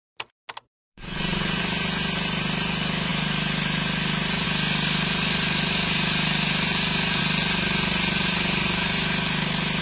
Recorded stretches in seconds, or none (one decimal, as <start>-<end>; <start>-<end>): 0.0-0.8; 1.6-9.8